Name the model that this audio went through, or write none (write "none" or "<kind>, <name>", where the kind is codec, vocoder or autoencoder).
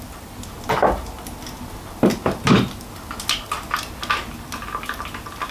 none